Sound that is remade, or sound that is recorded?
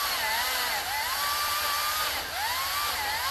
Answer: recorded